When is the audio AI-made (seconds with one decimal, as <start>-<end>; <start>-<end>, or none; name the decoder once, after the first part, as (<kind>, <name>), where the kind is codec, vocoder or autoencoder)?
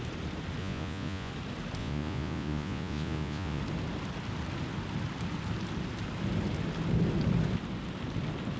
0.6-1.3 (vocoder, Vocos); 1.8-3.6